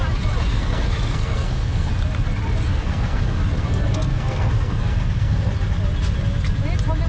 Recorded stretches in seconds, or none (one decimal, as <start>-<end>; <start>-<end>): 0.0-0.5; 1.9-2.7; 5.5-7.1